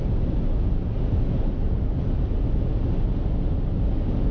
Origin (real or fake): real